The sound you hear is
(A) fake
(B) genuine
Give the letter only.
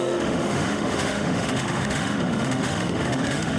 A